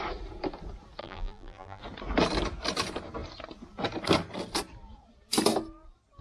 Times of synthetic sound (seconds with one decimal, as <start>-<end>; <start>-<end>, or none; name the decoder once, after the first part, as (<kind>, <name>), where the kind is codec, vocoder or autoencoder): 1.0-1.8 (vocoder, BigVGAN v2)